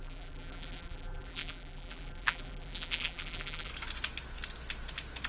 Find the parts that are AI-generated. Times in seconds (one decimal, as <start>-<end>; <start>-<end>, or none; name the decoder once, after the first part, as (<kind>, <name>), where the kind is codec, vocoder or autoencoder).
0.0-3.7 (vocoder, BigVGAN v2)

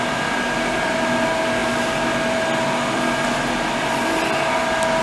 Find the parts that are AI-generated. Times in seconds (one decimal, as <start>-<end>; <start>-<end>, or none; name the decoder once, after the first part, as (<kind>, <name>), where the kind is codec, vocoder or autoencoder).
none

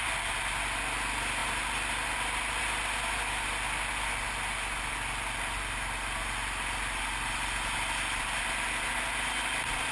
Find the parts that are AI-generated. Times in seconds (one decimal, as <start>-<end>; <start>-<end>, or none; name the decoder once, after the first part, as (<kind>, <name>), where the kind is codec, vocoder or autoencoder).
none

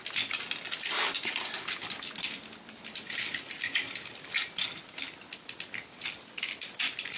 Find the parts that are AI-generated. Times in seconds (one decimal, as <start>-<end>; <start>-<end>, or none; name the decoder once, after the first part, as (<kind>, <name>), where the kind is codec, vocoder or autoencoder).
none

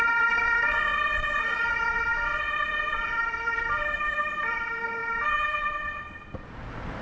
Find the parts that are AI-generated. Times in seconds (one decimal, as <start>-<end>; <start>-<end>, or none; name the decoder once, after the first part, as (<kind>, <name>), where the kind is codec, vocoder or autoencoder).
0.0-5.0 (vocoder, BigVGAN v2); 6.0-7.0

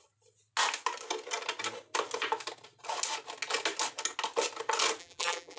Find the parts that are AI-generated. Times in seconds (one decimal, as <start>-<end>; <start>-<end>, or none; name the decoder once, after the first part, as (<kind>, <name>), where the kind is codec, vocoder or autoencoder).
5.0-5.6 (vocoder, BigVGAN v2)